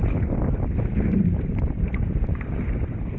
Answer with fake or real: real